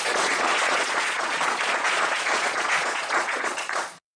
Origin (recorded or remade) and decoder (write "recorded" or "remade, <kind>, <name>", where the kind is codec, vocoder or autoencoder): remade, vocoder, Vocos